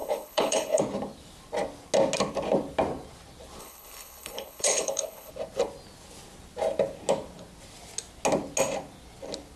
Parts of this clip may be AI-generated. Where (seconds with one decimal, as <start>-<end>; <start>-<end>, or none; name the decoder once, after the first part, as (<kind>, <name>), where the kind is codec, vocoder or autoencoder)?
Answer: 0.0-0.8 (codec, HILCodec); 3.6-5.3